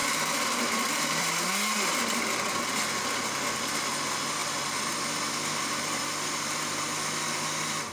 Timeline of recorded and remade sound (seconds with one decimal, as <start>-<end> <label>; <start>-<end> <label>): 0.0-3.1 remade; 3.1-4.4 recorded; 4.4-6.0 remade; 6.0-7.9 recorded